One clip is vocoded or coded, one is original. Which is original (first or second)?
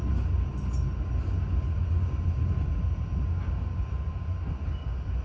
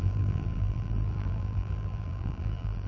first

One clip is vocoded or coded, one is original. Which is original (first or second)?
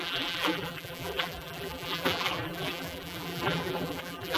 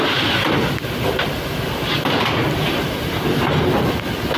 second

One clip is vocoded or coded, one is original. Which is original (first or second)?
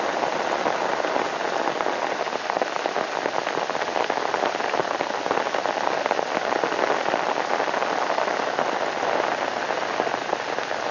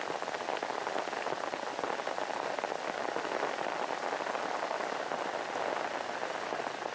first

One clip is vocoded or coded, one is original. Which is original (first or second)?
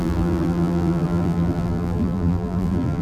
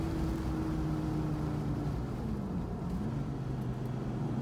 second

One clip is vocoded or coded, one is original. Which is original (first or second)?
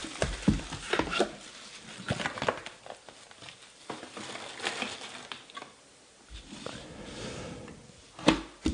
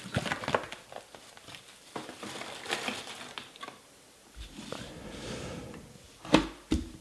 first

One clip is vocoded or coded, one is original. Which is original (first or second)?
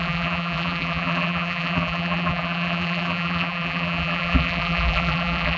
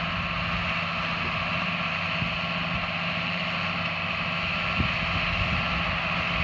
second